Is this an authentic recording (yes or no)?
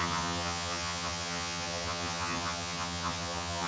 no